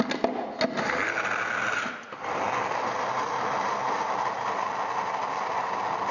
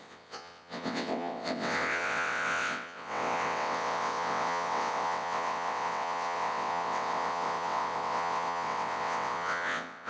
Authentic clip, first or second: first